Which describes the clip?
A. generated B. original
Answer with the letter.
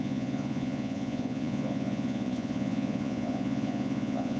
A